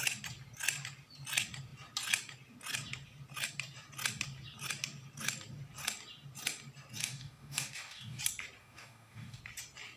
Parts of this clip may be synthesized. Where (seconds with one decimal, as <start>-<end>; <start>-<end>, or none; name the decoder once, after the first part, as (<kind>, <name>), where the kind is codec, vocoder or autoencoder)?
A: 7.0-8.2 (codec, DAC); 8.6-9.4